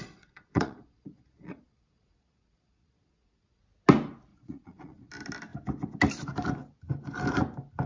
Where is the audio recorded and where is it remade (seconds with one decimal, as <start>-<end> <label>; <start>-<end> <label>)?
0.0-3.6 remade; 3.6-4.3 recorded; 4.3-5.1 remade; 5.1-7.9 recorded